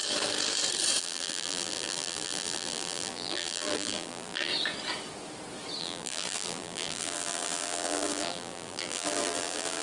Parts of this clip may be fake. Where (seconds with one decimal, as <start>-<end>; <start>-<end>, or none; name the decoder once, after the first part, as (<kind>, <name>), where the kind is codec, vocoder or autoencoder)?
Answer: 1.0-4.5 (vocoder, BigVGAN v2); 5.8-9.8

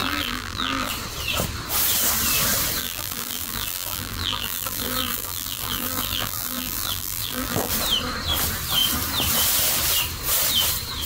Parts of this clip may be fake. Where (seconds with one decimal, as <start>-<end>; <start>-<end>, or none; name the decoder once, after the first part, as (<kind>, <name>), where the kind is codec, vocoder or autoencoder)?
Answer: 0.0-0.9 (vocoder, BigVGAN v2); 2.8-7.7

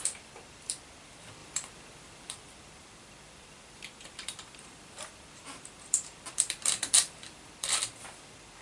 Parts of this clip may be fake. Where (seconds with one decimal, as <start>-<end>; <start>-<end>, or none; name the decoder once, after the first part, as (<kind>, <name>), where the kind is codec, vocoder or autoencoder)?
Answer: 0.0-8.6 (vocoder, BigVGAN v2)

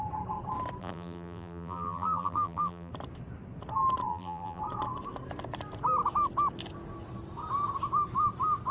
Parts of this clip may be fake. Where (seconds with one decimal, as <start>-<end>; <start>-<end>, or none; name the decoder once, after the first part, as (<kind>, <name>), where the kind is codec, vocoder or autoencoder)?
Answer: 0.8-2.9 (vocoder, BigVGAN v2); 4.1-4.6

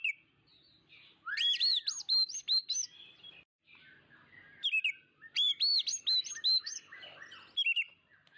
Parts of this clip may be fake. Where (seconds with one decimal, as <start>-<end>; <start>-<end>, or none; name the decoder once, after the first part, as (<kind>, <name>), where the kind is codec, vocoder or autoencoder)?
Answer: none

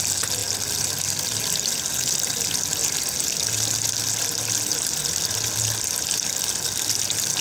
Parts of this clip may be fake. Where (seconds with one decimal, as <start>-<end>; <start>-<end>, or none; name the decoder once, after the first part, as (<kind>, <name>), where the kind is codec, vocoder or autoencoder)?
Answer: none